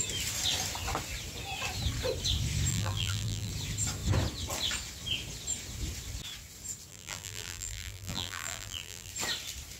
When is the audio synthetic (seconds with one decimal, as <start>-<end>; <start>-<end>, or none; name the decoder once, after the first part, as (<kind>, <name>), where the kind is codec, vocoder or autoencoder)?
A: 2.7-3.5 (vocoder, BigVGAN v2); 6.9-9.1